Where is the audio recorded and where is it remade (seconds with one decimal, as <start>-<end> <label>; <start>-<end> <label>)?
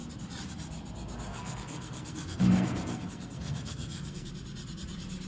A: 0.0-1.3 recorded; 1.3-4.3 remade; 4.3-5.3 recorded